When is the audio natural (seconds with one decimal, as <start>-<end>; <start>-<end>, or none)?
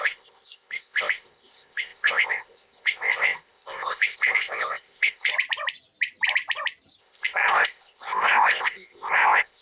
5.3-7.0